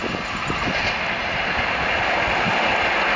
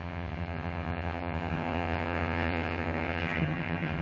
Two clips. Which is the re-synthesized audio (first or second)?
second